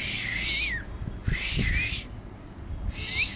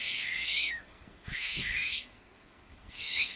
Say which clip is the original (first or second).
first